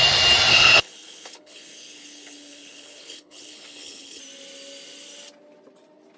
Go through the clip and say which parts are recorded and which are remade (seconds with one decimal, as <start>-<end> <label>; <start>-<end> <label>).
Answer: 0.0-0.5 recorded; 0.5-4.2 remade; 4.2-6.2 recorded